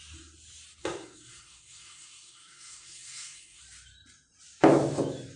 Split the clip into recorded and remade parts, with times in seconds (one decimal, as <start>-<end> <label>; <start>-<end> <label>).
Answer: 0.0-0.8 recorded; 0.8-3.6 remade; 3.6-5.4 recorded